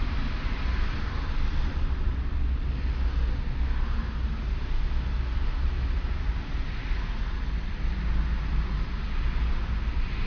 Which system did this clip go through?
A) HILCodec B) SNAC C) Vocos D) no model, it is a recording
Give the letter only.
D